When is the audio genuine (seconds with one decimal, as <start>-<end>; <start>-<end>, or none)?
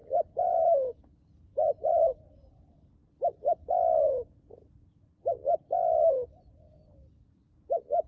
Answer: 1.0-1.5; 2.3-8.1